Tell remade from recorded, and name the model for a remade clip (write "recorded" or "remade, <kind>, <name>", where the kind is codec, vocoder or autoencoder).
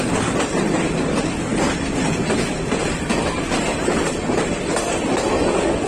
recorded